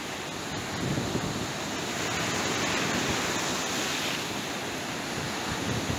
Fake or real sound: real